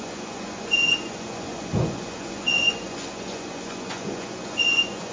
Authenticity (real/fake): fake